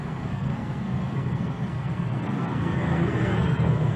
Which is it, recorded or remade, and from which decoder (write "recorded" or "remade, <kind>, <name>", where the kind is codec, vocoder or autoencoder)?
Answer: remade, codec, SNAC